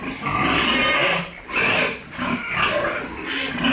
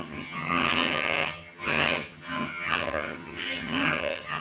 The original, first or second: first